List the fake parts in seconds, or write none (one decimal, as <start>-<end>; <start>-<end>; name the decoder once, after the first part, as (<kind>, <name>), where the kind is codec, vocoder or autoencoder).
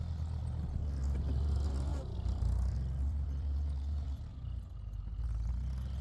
1.9-5.5 (vocoder, BigVGAN v2)